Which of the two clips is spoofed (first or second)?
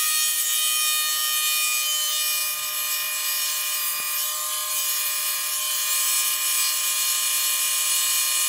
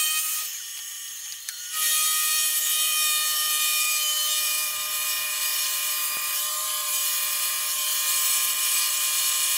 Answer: second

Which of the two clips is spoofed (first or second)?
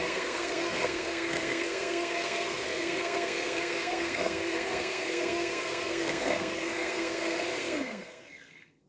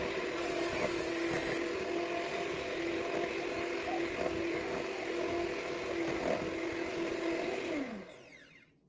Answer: first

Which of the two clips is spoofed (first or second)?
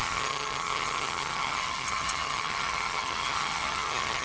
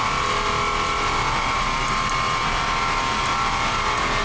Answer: first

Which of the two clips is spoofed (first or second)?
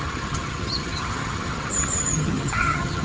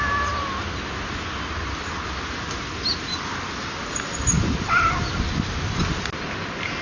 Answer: first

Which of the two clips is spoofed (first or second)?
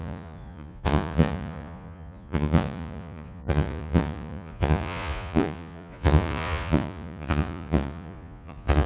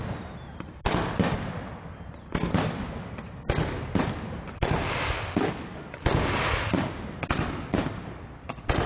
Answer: first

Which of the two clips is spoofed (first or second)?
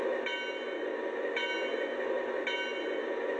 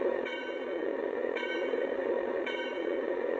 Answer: second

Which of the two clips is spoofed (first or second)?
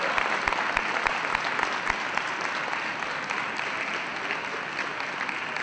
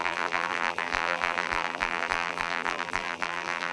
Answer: second